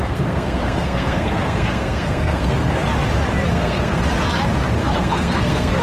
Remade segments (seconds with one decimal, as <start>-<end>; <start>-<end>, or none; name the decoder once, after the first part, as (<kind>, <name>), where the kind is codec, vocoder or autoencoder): 0.0-2.8 (codec, SNAC); 3.5-4.0; 4.8-5.8